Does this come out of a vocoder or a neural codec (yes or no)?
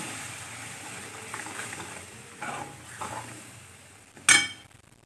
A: no